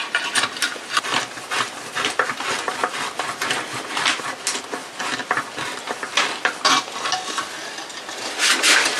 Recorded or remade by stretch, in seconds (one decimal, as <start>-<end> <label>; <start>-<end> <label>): 0.0-9.0 recorded